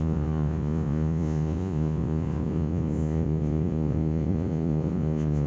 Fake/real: fake